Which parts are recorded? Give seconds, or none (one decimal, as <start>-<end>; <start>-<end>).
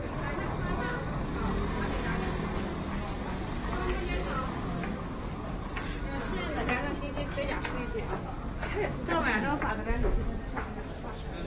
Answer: 0.0-11.5